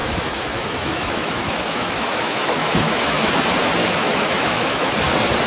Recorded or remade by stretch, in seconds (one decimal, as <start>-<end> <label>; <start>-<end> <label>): 0.0-3.3 remade; 3.3-3.8 recorded; 3.8-4.9 remade; 4.9-5.5 recorded